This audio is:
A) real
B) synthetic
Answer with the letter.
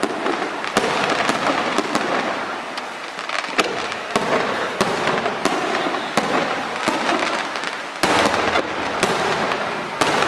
A